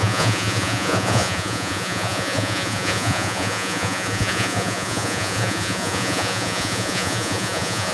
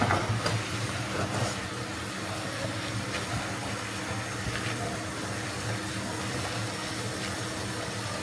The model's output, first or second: first